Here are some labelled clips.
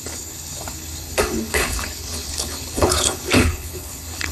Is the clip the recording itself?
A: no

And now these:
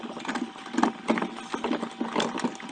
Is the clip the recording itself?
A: yes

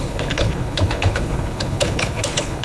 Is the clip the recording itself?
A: no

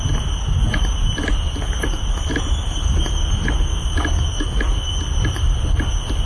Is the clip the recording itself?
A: yes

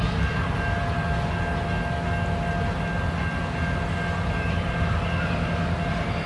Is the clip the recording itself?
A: yes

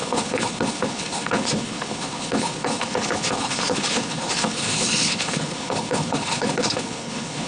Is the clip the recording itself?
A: no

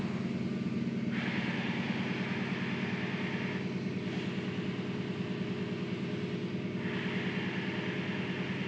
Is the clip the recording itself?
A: yes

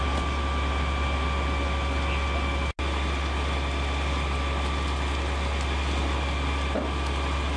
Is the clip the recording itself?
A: yes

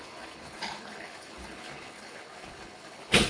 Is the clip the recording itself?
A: no